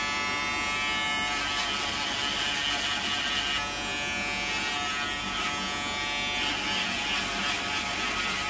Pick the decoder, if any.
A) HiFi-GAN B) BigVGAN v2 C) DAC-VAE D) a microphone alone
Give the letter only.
D